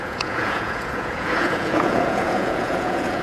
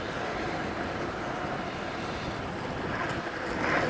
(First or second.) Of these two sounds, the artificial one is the first